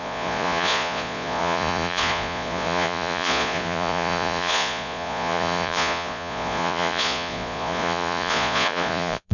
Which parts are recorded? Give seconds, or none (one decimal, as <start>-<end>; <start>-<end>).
none